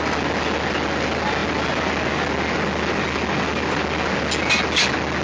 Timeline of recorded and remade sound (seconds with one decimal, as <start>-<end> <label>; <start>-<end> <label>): 0.0-5.2 recorded